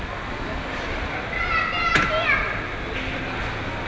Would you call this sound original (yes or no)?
yes